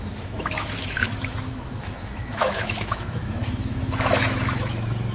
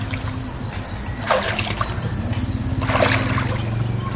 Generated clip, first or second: first